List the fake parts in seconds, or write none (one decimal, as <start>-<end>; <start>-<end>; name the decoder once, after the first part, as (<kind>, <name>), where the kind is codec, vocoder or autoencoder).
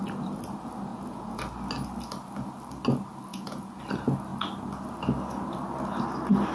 0.9-1.4 (vocoder, Vocos); 3.3-3.8